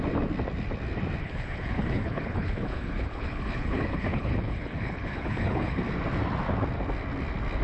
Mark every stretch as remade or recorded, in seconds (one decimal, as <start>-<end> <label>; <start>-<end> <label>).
0.0-1.2 recorded; 1.2-5.8 remade; 5.8-7.6 recorded